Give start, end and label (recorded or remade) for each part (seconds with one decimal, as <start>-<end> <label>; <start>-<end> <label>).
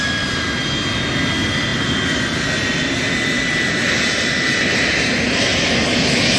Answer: 0.0-6.4 recorded